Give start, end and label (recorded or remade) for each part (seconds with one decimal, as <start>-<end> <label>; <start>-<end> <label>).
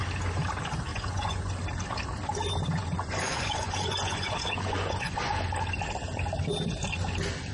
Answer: 0.0-0.9 recorded; 0.9-1.5 remade; 1.5-2.8 recorded; 2.8-5.3 remade; 5.3-7.5 recorded